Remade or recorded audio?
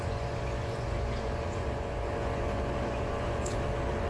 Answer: remade